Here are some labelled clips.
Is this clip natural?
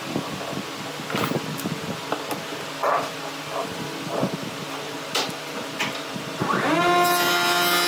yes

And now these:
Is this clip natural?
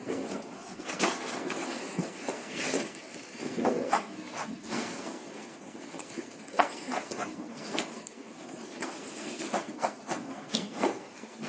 no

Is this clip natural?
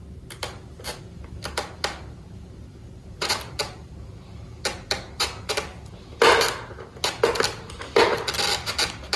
yes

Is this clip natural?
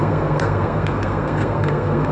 no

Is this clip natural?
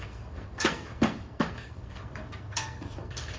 no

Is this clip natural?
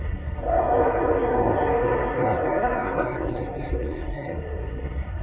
no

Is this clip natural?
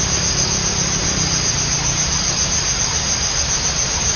yes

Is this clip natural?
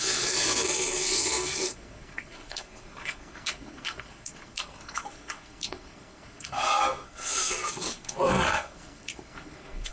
no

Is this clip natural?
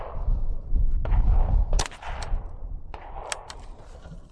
yes